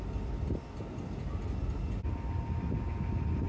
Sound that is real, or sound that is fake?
real